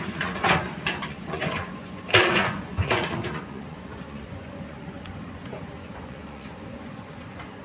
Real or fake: fake